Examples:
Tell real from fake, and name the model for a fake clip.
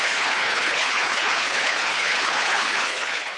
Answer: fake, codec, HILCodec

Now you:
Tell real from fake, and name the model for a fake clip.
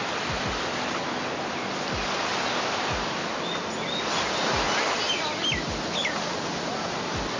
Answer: real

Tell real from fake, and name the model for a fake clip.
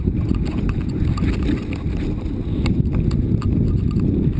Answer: real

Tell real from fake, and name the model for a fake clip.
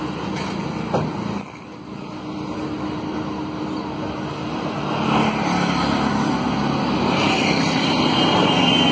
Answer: real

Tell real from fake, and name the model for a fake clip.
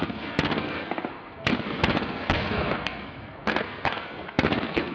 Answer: fake, codec, SNAC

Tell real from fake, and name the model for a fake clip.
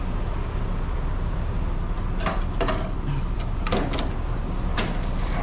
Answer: real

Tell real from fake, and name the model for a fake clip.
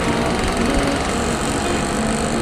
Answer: real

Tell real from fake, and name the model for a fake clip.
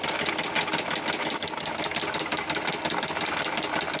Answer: real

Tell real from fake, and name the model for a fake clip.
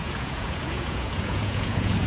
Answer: fake, vocoder, Vocos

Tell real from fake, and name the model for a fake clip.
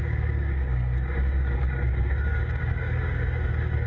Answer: fake, codec, DAC